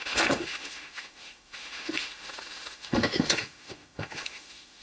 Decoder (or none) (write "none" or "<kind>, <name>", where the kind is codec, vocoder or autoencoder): autoencoder, DAC-VAE